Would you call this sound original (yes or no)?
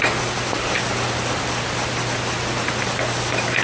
yes